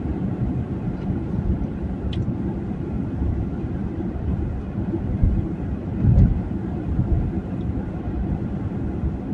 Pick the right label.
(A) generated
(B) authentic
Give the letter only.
A